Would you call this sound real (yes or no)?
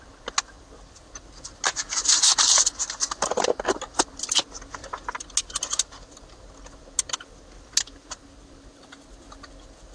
yes